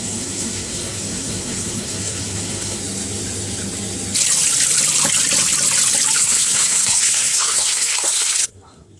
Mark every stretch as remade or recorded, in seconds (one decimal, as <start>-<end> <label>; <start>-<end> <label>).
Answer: 0.0-2.8 remade; 2.8-6.2 recorded; 6.2-9.0 remade

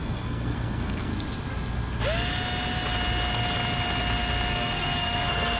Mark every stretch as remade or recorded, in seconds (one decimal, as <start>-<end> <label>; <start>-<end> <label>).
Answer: 0.0-1.1 remade; 1.1-4.5 recorded; 4.5-5.6 remade

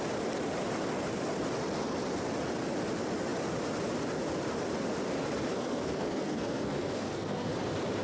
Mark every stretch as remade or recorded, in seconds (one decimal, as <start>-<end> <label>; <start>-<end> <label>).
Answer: 0.0-5.5 recorded; 5.5-7.5 remade; 7.5-8.0 recorded

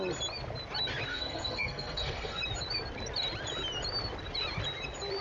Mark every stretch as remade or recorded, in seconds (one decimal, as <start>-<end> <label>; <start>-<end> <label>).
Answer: 0.0-1.1 recorded; 1.1-2.4 remade; 2.4-5.2 recorded

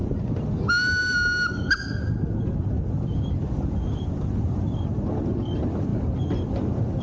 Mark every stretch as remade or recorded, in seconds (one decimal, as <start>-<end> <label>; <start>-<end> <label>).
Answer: 0.0-7.0 recorded

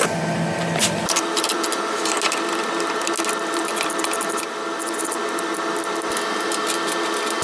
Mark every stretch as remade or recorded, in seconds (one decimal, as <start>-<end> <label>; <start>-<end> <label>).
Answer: 0.0-7.4 recorded

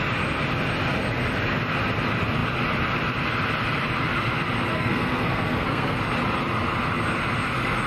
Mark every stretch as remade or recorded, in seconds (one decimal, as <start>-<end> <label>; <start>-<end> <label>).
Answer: 0.0-4.7 recorded; 4.7-6.0 remade; 6.0-7.9 recorded